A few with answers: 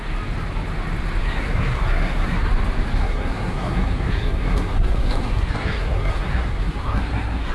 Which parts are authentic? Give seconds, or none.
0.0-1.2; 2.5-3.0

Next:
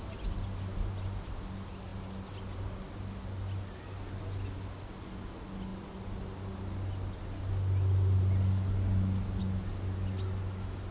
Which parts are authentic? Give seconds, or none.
0.0-10.9

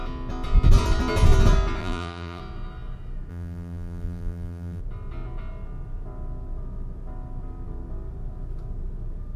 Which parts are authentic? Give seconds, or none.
0.0-1.8; 2.4-3.3; 4.8-9.4